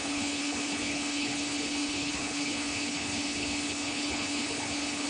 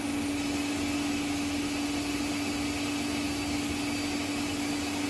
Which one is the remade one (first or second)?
first